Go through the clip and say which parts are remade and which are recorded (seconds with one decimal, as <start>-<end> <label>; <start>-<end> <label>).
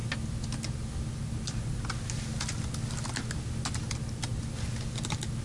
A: 0.0-5.4 recorded